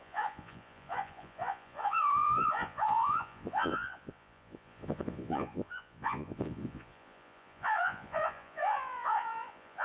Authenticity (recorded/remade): remade